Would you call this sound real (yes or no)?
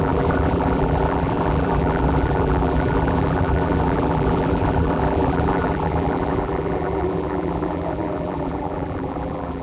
no